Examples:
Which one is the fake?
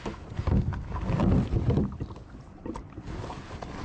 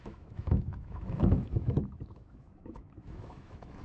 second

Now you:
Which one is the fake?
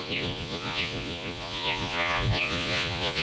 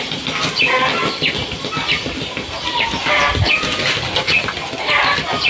first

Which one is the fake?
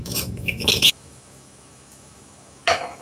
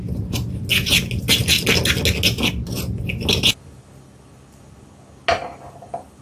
first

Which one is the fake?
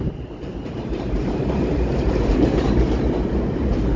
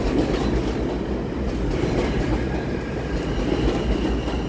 first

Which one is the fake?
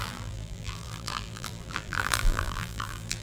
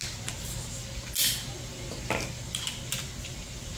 first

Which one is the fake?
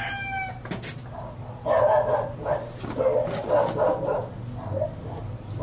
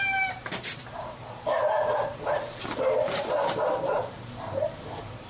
second